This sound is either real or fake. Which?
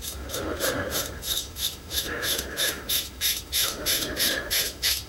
fake